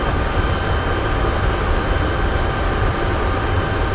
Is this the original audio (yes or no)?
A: yes